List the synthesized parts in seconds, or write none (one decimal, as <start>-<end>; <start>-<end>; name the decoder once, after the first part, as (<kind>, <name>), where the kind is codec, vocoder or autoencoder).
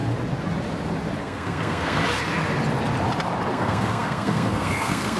1.2-2.0 (codec, SNAC); 3.5-5.2